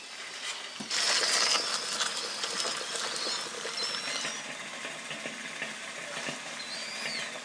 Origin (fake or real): real